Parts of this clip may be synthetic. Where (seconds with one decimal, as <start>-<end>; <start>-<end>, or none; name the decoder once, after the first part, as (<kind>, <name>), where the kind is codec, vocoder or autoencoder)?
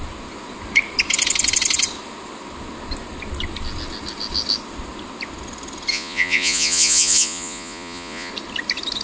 5.9-8.3 (vocoder, Vocos)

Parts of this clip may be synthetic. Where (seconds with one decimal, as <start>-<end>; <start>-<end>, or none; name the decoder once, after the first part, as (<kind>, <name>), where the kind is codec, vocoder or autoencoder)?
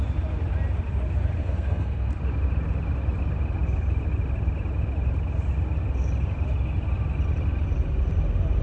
1.4-2.1 (codec, SNAC)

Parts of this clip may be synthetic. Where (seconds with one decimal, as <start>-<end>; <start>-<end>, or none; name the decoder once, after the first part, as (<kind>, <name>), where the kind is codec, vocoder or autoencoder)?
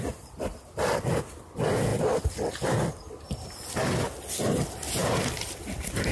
none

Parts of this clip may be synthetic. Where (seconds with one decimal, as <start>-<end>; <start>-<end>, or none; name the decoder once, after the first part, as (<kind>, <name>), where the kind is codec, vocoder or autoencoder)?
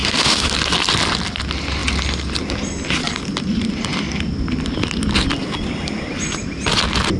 0.0-0.5 (autoencoder, DAC-VAE)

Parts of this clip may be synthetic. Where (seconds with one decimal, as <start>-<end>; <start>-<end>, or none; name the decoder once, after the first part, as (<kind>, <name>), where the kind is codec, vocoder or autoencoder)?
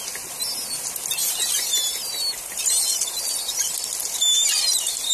1.2-2.7 (vocoder, BigVGAN v2); 4.0-5.1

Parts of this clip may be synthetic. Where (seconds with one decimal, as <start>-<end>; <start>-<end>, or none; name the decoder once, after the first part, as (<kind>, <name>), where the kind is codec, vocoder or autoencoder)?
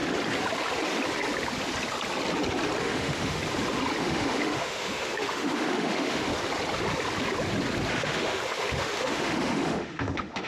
2.8-3.4 (autoencoder, DAC-VAE); 4.0-6.3; 7.9-10.5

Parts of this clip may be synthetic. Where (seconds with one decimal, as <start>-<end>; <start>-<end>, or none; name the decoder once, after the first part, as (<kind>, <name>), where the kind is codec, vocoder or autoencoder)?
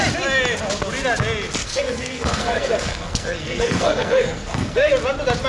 1.6-4.9 (codec, SNAC)